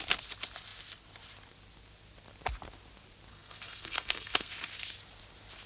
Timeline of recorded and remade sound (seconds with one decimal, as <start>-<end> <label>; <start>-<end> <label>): 0.0-3.3 recorded; 3.3-4.5 remade; 4.5-5.7 recorded